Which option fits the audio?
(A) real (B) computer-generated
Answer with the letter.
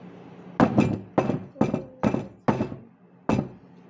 A